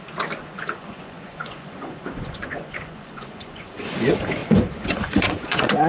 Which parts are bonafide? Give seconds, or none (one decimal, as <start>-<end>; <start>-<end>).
0.0-0.4; 3.9-4.4